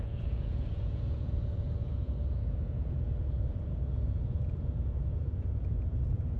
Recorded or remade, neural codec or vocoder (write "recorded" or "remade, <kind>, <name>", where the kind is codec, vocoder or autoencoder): remade, vocoder, Vocos